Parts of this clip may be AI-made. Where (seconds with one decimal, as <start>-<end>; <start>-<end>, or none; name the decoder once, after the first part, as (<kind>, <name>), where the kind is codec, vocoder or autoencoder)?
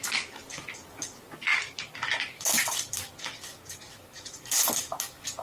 0.0-5.4 (codec, DAC)